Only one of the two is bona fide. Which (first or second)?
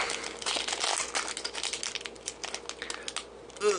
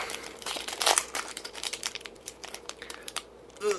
first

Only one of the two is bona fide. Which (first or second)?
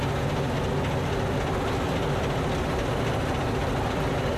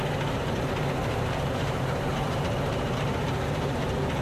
first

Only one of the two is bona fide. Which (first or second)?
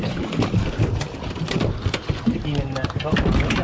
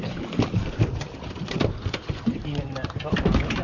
first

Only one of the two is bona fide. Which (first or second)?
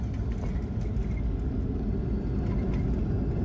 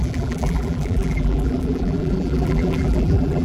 first